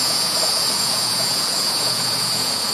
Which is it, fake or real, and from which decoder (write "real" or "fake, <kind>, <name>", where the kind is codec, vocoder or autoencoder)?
fake, vocoder, Vocos